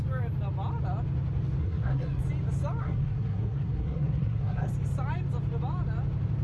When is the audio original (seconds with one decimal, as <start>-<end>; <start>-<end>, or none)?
0.0-1.6; 2.2-2.8; 4.7-6.4